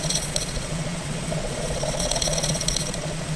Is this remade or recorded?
remade